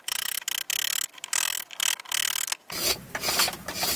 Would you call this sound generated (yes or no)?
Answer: no